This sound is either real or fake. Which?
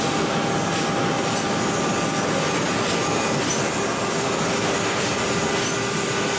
real